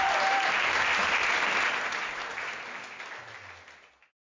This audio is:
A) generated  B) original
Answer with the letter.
B